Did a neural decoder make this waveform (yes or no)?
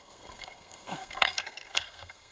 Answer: yes